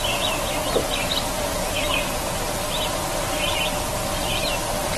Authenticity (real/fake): real